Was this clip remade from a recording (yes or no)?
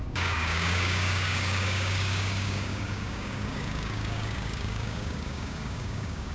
yes